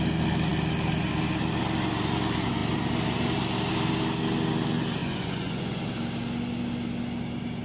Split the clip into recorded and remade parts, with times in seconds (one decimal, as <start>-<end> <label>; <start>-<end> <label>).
0.0-5.0 recorded; 5.0-5.8 remade; 5.8-7.6 recorded